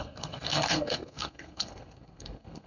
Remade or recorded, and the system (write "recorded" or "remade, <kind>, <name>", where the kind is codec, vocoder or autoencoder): remade, codec, SNAC